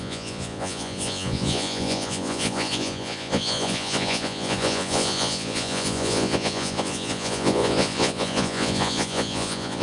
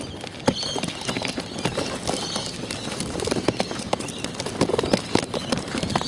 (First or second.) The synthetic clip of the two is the first